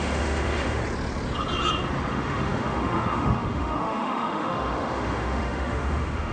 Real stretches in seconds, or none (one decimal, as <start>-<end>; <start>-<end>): 0.8-2.1